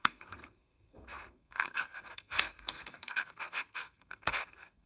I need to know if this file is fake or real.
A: fake